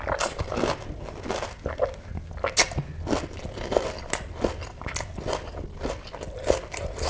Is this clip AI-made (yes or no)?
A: no